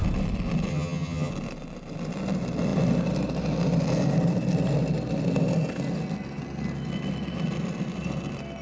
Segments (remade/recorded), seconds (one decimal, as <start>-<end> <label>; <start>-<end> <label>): 0.0-0.7 recorded; 0.7-1.3 remade; 1.3-8.6 recorded